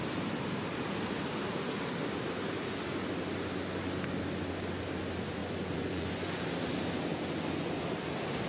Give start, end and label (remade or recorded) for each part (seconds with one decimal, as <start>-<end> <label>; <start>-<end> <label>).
0.0-5.4 recorded; 5.4-6.4 remade; 6.4-7.1 recorded; 7.1-7.7 remade; 7.7-8.5 recorded